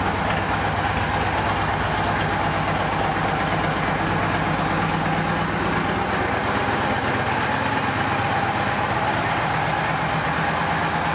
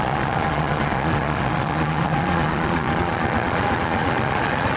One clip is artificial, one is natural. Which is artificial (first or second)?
second